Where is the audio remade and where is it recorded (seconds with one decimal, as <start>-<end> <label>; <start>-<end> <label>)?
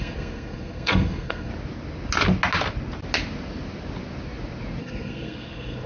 0.0-1.5 remade; 1.5-4.8 recorded; 4.8-5.9 remade